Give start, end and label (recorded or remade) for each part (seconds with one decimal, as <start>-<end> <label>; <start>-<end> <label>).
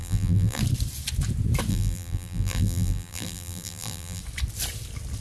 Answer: 0.0-0.6 remade; 0.6-1.7 recorded; 1.7-4.2 remade; 4.2-5.2 recorded